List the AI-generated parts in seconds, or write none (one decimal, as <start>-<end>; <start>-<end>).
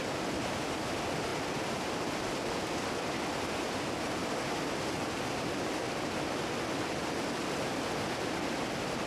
none